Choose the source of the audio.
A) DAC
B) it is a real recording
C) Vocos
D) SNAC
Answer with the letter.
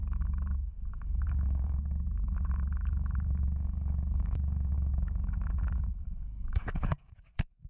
A